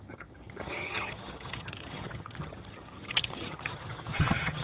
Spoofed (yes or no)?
yes